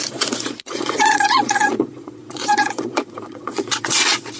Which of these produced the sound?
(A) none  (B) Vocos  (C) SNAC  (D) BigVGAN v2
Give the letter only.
B